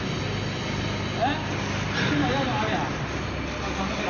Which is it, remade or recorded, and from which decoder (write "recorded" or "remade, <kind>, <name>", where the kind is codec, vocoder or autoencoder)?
recorded